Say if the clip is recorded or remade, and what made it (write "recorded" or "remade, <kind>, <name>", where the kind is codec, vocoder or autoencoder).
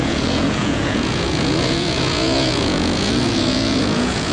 remade, vocoder, Vocos